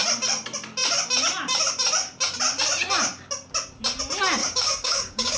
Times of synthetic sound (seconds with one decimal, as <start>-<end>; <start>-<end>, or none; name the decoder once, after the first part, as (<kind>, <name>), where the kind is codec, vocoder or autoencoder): 4.4-5.4 (codec, DAC)